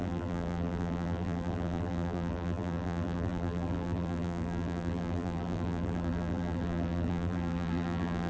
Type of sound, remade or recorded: remade